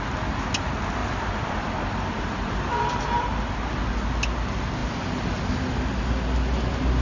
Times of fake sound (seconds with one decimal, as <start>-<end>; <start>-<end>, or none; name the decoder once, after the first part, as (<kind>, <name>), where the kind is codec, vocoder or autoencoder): 1.0-3.5 (vocoder, BigVGAN v2)